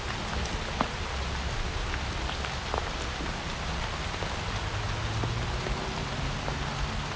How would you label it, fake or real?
real